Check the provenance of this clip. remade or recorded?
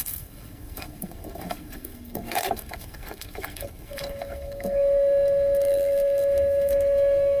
remade